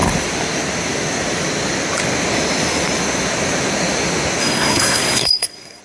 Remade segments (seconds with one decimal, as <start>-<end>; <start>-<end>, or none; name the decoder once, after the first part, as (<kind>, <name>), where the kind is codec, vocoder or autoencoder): 4.4-5.8 (codec, SNAC)